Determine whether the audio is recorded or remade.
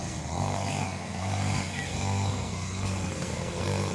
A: remade